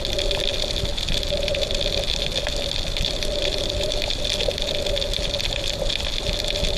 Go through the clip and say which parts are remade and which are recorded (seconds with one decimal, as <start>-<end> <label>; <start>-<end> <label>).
0.0-0.9 recorded; 0.9-4.2 remade; 4.2-5.1 recorded; 5.1-6.1 remade; 6.1-6.8 recorded